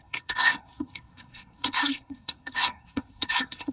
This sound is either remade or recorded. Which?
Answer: remade